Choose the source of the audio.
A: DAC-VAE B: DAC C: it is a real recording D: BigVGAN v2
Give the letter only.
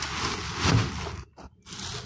C